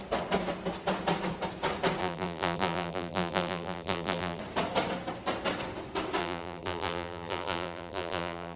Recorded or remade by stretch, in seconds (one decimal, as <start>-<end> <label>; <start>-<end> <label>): 0.0-2.0 recorded; 2.0-4.4 remade; 4.4-6.2 recorded; 6.2-8.6 remade